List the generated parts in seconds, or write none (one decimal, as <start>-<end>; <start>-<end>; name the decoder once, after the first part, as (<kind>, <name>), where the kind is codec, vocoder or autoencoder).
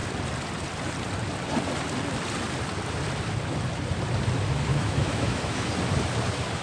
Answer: 4.7-5.7 (autoencoder, DAC-VAE)